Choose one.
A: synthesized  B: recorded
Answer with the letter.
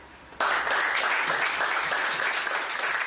B